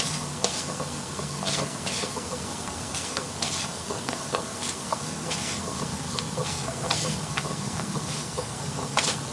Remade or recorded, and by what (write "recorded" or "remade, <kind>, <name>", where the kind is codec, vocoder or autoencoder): remade, codec, SNAC